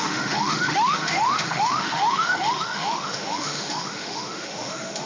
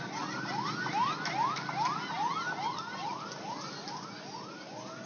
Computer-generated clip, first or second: first